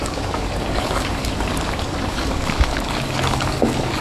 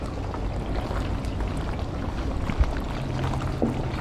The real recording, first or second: second